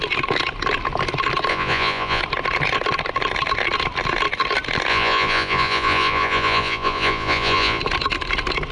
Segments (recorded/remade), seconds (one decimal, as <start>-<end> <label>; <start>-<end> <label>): 0.0-1.5 recorded; 1.5-2.2 remade; 2.2-4.9 recorded; 4.9-7.8 remade; 7.8-8.7 recorded